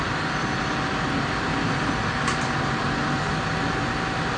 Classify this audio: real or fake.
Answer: real